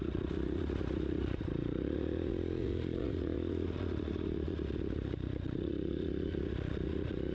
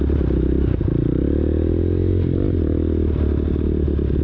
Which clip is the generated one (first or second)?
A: first